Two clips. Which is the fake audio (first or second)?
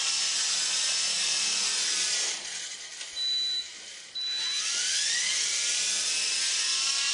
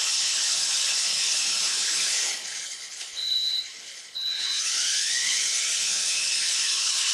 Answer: second